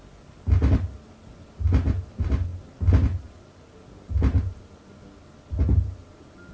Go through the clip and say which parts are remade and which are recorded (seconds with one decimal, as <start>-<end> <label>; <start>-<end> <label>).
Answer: 0.0-6.5 recorded